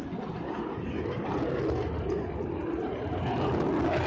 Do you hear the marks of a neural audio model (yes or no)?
no